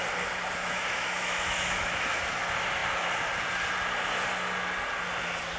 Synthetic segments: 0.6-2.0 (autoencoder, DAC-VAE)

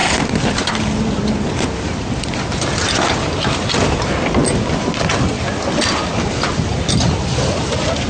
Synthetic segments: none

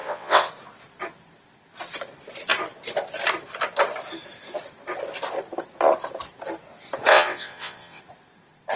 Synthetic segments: 0.0-0.5 (vocoder, WaveNeXt); 7.1-8.0